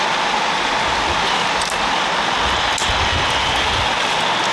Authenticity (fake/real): real